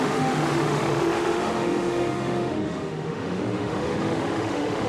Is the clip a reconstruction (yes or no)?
yes